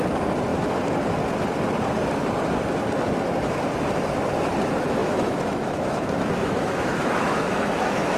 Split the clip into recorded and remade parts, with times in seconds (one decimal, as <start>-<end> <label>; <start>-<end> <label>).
0.0-5.0 recorded; 5.0-8.2 remade